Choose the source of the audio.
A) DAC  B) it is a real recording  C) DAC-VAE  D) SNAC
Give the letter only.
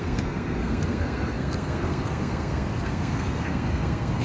D